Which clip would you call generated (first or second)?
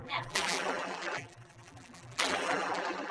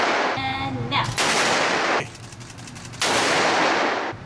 first